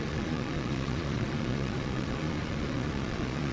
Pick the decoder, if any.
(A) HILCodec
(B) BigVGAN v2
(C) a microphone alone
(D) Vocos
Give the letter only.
D